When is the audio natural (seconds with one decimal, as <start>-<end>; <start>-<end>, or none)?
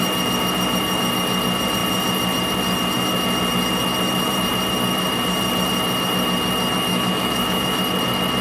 0.0-6.9; 7.8-8.4